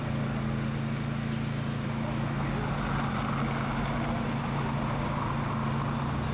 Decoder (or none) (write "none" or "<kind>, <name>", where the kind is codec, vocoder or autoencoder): none